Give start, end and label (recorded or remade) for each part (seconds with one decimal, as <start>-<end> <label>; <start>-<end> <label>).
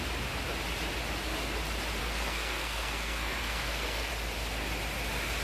0.0-2.0 recorded; 2.0-4.1 remade; 4.1-5.4 recorded